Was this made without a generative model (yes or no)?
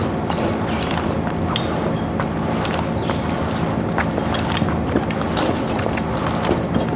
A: yes